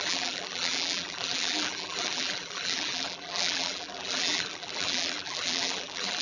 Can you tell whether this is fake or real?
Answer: fake